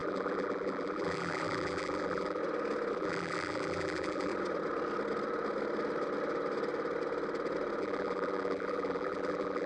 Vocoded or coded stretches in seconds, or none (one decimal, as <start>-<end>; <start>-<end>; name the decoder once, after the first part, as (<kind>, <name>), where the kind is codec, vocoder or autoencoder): 0.0-2.4 (vocoder, BigVGAN v2); 2.9-4.3; 7.8-9.7